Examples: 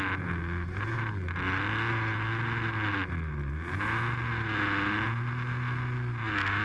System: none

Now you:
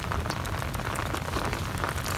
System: none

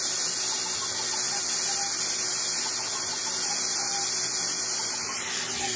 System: none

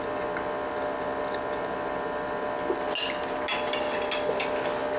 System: none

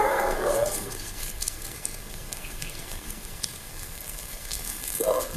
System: codec, SNAC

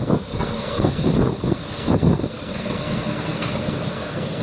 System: codec, SNAC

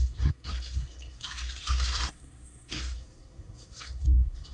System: codec, SNAC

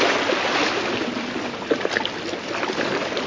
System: none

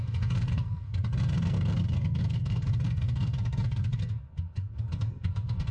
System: codec, SNAC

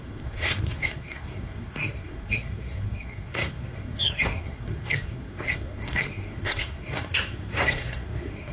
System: codec, SNAC